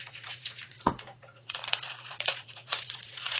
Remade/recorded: remade